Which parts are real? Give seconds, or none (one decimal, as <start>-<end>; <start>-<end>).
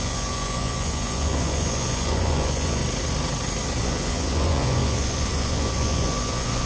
2.8-3.8